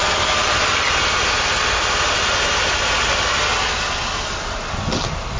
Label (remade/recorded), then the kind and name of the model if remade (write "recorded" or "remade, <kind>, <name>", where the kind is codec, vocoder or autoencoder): recorded